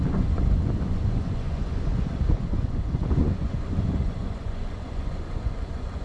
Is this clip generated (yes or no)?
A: yes